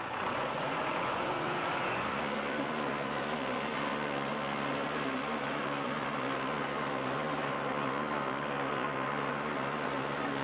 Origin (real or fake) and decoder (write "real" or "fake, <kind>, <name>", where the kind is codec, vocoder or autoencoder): fake, vocoder, Vocos